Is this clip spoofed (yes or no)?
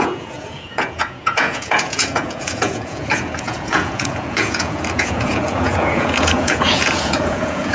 yes